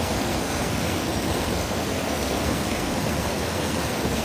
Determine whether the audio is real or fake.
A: fake